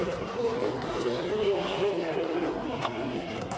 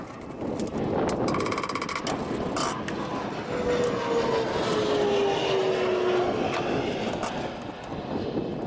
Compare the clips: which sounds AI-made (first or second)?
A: first